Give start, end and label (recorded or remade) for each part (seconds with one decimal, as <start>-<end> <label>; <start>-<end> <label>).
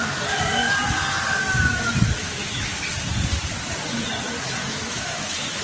0.0-2.2 recorded; 2.2-2.8 remade; 2.8-4.6 recorded; 4.6-5.6 remade